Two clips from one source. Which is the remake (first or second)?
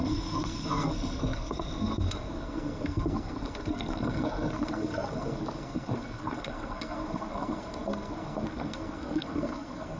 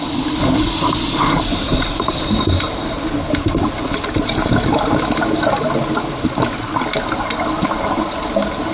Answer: first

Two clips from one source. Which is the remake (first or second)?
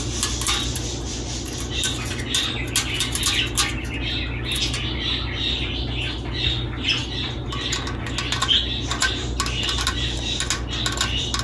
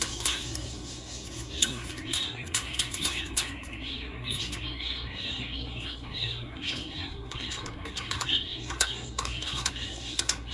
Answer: second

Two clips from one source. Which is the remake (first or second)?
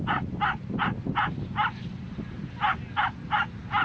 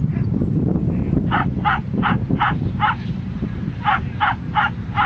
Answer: second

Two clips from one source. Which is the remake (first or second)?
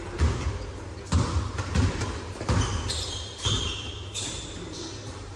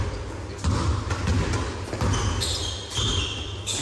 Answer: first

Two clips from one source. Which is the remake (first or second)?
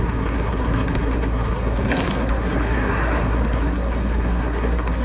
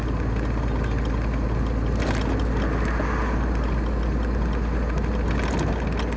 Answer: first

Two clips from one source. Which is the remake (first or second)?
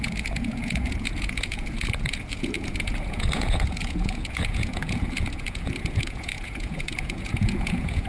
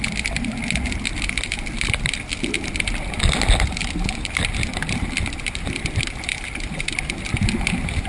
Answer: first